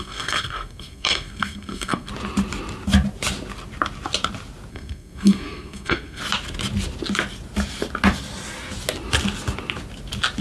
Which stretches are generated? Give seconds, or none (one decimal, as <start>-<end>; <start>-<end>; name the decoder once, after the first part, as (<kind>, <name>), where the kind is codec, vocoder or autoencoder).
0.0-2.1 (codec, SNAC); 4.7-6.2